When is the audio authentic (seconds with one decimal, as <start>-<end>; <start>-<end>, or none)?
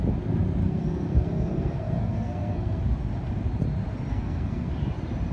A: 0.0-0.6; 2.8-4.1; 4.7-5.3